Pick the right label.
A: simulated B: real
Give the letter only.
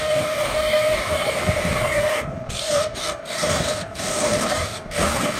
A